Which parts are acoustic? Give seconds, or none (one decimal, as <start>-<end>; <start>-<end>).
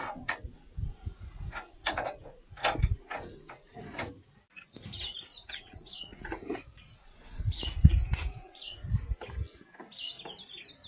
4.1-5.3; 9.0-10.9